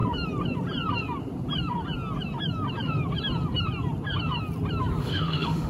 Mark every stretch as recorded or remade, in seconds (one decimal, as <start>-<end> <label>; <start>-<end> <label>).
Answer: 0.0-5.0 recorded; 5.0-5.7 remade